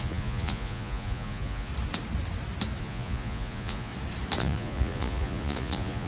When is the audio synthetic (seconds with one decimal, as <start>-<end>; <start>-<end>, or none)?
0.0-1.7; 2.8-3.9; 4.4-6.1